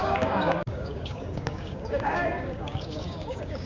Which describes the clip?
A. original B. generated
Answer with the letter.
B